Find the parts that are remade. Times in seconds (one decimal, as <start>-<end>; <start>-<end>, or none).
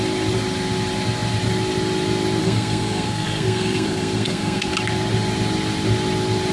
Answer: 2.4-4.7